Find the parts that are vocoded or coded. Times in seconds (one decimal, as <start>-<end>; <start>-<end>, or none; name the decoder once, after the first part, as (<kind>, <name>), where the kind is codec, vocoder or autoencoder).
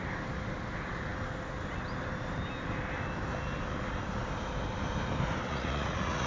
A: 5.5-6.3 (vocoder, Vocos)